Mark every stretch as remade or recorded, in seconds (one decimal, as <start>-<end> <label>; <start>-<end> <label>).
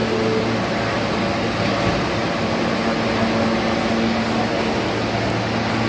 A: 0.0-5.9 recorded